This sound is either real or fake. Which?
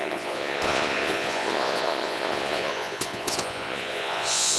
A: fake